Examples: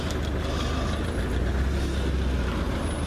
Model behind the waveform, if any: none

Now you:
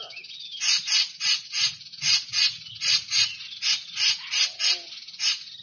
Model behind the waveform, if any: none